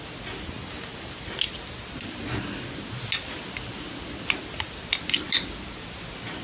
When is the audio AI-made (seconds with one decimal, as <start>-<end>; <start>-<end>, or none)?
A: none